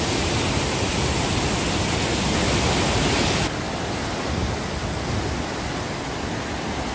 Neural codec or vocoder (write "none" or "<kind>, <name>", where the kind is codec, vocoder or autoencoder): none